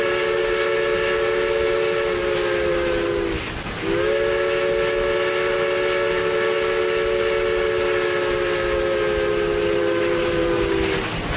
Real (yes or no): yes